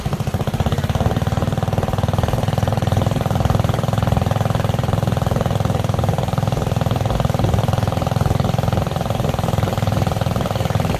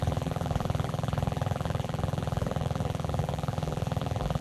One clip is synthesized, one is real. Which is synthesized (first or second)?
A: second